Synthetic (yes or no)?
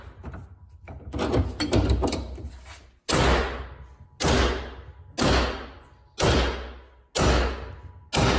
no